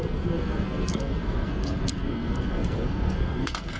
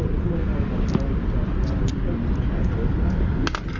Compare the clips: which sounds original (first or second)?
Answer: second